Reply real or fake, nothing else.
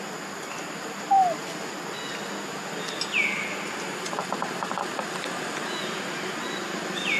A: real